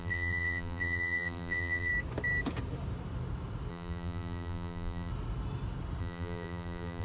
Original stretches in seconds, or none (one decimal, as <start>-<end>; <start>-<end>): 1.9-3.7; 5.1-6.0